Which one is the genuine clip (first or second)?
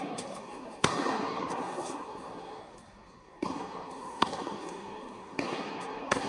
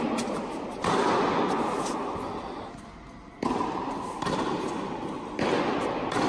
second